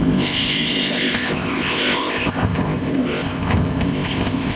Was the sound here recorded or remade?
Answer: remade